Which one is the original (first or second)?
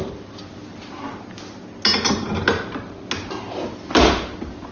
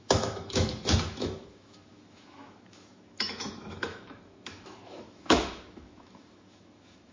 first